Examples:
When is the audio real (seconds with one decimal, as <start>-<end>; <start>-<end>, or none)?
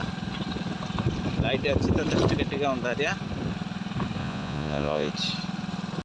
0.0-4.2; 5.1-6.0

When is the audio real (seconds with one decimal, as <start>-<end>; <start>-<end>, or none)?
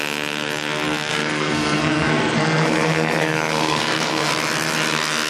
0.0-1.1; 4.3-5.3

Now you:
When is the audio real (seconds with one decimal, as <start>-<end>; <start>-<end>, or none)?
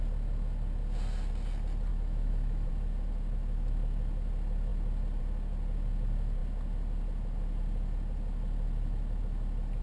0.0-1.9; 2.7-9.8